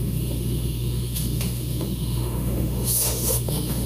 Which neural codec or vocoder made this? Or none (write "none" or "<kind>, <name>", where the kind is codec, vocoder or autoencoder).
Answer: autoencoder, DAC-VAE